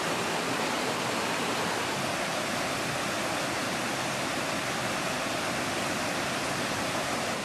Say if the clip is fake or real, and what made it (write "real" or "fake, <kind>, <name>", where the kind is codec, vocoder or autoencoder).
real